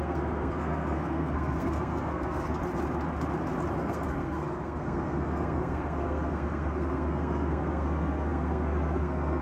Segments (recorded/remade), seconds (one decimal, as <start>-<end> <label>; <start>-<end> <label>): 0.0-2.6 remade; 2.6-3.8 recorded; 3.8-9.4 remade